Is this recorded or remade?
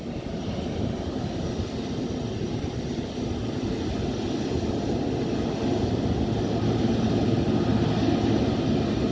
recorded